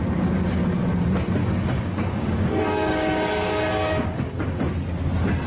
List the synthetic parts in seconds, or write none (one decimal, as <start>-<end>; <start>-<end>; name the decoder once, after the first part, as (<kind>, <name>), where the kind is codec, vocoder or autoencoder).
1.4-4.7 (codec, DAC)